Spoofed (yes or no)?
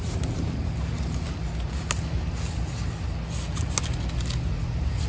no